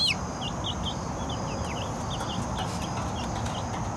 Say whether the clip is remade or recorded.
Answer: recorded